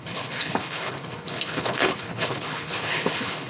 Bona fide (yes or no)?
no